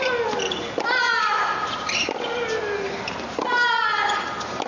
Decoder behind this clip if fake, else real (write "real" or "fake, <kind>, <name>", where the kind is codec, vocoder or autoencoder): real